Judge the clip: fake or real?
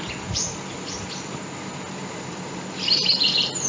fake